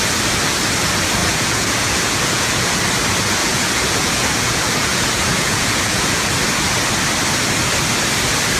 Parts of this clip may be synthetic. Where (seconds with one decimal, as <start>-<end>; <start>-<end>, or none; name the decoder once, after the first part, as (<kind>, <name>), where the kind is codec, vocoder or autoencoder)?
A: 1.2-2.8 (vocoder, Vocos); 3.4-6.3